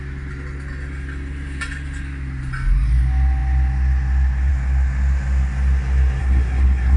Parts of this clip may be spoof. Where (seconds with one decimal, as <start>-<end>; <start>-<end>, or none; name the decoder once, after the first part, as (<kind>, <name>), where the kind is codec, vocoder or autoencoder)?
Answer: 6.2-7.0 (codec, SNAC)